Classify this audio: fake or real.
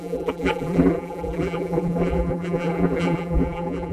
fake